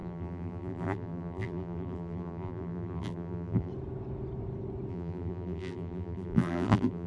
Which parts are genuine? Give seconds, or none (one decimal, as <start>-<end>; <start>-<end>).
3.7-4.9